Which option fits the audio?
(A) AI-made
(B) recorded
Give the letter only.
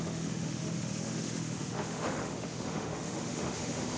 A